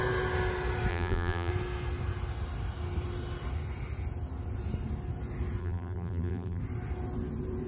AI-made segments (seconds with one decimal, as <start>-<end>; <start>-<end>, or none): 0.9-1.5; 5.6-6.6

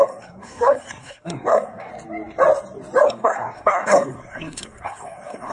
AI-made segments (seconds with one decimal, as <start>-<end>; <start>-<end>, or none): 0.0-1.9; 3.1-5.5

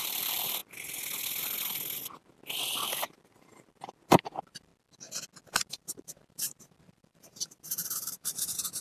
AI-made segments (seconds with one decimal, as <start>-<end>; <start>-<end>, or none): 0.0-0.6; 2.6-4.7; 5.5-8.8

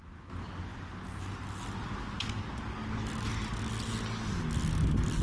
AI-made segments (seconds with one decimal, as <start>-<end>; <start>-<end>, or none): none

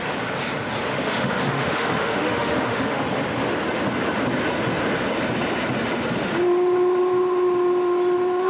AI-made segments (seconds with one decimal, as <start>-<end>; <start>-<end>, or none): 0.9-3.0

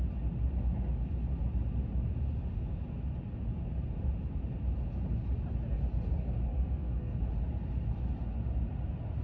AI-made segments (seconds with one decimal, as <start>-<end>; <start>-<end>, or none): 6.5-7.2

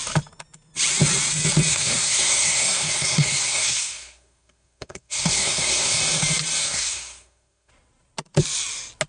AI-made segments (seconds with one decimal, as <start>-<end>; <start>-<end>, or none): 1.7-6.0; 6.6-7.7